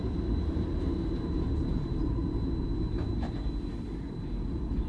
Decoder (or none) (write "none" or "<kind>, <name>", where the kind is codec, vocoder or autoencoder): none